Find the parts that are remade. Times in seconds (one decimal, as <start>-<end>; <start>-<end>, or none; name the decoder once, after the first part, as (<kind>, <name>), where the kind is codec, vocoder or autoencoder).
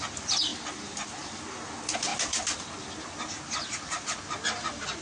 none